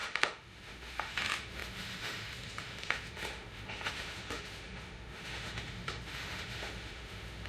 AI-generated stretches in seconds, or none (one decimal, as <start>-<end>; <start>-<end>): 0.0-7.5